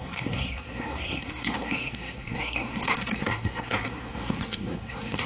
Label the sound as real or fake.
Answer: fake